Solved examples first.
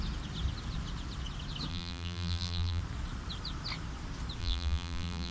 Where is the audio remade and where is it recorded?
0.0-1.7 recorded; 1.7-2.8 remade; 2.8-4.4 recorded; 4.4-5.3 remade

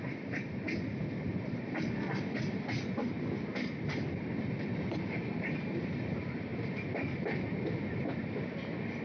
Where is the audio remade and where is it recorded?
0.0-9.0 remade

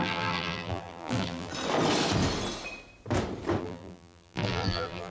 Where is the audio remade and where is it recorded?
0.0-1.5 remade; 1.5-3.6 recorded; 3.6-5.1 remade

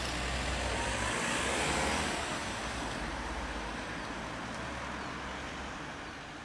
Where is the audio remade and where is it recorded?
0.0-2.4 recorded; 2.4-3.4 remade; 3.4-6.4 recorded

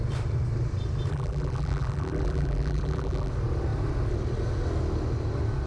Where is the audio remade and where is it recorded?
0.0-1.1 recorded; 1.1-3.3 remade; 3.3-5.7 recorded

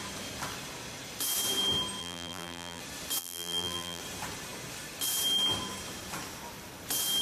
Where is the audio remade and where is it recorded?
0.0-2.0 recorded; 2.0-2.8 remade; 2.8-3.2 recorded; 3.2-4.0 remade; 4.0-7.2 recorded

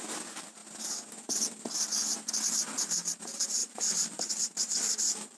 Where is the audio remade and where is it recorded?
0.0-0.6 remade; 0.6-3.2 recorded; 3.2-5.4 remade